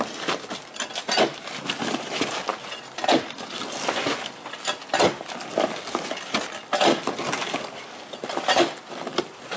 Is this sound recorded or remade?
recorded